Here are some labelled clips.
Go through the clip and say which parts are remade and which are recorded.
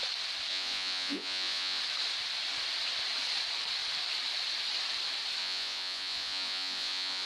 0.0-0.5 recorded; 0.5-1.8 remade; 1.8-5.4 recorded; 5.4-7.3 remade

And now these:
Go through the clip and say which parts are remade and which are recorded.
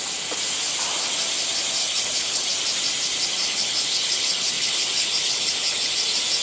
0.0-1.8 recorded; 1.8-2.5 remade; 2.5-3.4 recorded; 3.4-5.9 remade; 5.9-6.4 recorded